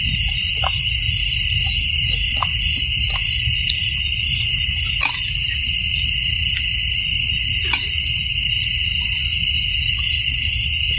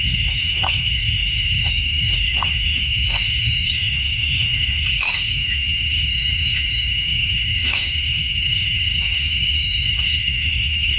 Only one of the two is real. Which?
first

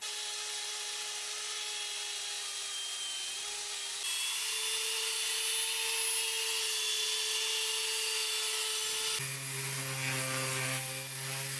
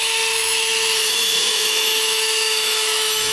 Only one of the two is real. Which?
first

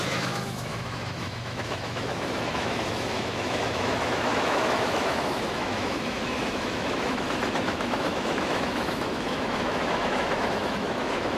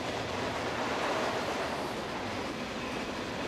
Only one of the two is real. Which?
second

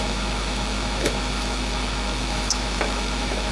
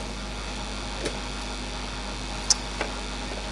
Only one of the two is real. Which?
second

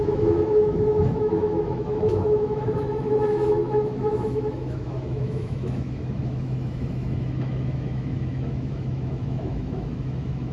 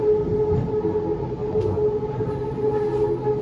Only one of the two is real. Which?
second